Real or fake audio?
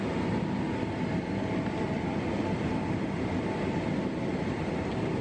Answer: real